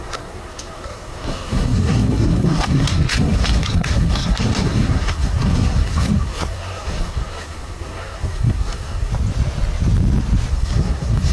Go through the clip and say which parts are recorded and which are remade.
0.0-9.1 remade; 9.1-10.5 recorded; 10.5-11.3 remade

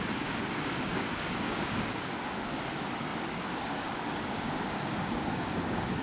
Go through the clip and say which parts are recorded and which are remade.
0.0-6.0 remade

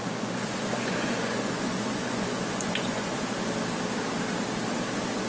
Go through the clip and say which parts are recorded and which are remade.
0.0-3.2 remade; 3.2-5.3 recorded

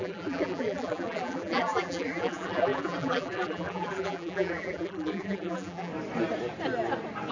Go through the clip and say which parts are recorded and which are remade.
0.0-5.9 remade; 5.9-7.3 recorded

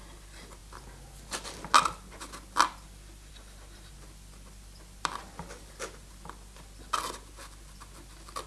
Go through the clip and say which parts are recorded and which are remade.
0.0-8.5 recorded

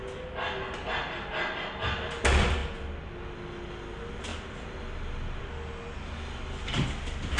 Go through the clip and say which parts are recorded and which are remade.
0.0-7.4 recorded

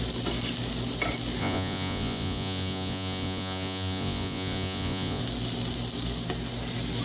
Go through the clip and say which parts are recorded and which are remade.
0.0-1.4 recorded; 1.4-5.2 remade; 5.2-7.0 recorded

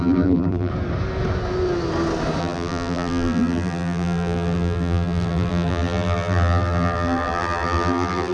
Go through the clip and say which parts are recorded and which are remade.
0.0-0.7 remade; 0.7-2.4 recorded; 2.4-8.3 remade